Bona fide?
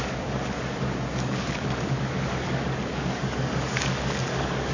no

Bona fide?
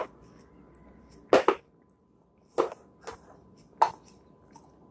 yes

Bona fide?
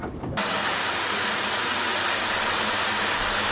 yes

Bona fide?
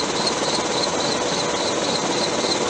yes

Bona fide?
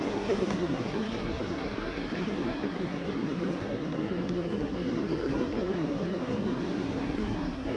no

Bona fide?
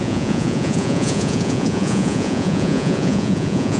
no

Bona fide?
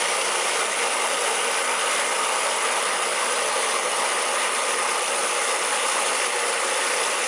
yes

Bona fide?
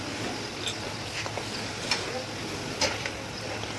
yes